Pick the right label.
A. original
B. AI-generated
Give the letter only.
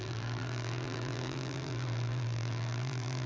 B